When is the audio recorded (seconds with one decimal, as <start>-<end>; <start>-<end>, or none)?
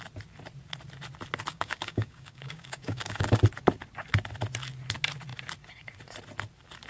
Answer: 0.0-1.5; 3.4-6.9